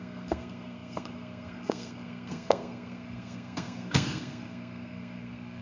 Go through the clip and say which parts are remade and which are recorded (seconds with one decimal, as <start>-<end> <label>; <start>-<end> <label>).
0.0-5.6 remade